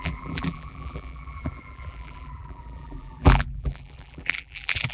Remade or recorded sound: remade